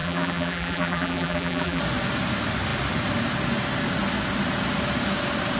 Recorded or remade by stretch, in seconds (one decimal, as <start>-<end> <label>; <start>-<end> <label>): 0.0-1.8 remade; 1.8-5.6 recorded